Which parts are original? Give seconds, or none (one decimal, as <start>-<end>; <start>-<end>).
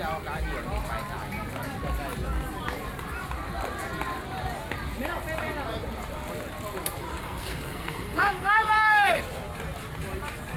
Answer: 0.0-7.1; 9.2-10.6